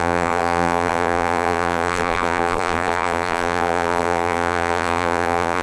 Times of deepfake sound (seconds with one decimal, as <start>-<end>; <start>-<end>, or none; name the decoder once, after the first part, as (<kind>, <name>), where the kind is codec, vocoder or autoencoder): 0.0-5.6 (vocoder, BigVGAN v2)